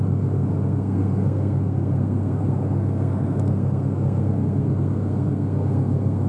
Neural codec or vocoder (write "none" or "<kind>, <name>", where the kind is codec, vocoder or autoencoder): codec, SNAC